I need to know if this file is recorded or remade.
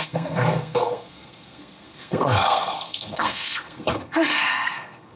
remade